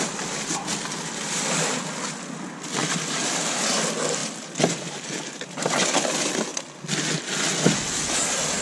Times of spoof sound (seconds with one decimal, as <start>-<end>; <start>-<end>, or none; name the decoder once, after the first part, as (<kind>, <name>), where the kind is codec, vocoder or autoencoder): 2.8-3.4 (vocoder, BigVGAN v2)

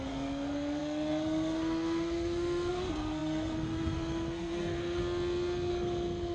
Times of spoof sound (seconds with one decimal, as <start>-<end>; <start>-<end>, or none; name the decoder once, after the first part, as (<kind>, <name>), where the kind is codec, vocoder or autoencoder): 0.0-5.0 (codec, SNAC); 5.7-6.3

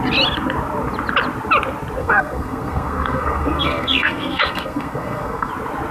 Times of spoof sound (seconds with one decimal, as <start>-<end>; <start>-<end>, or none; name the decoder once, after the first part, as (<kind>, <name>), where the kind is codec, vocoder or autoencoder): 2.0-5.5 (codec, SNAC)

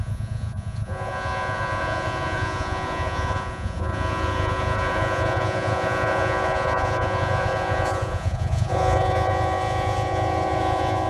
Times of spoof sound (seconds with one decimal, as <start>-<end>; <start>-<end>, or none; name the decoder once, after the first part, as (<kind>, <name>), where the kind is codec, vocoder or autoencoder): 0.0-11.1 (vocoder, Vocos)

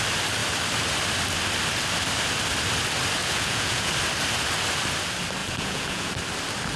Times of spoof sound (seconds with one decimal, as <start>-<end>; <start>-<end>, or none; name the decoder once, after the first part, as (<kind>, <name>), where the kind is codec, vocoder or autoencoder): 3.2-3.9 (vocoder, Vocos); 5.4-6.1

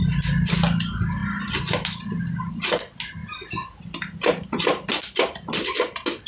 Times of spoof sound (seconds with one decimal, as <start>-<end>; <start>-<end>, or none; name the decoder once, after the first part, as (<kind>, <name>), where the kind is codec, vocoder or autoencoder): none

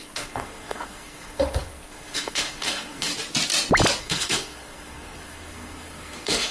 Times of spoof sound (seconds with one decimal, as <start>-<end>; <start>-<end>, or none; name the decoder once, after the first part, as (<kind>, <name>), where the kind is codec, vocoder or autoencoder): 0.0-3.1 (codec, SNAC); 4.0-6.5